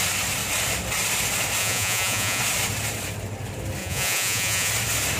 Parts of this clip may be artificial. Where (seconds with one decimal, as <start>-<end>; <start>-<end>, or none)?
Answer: 1.6-2.4; 3.8-4.7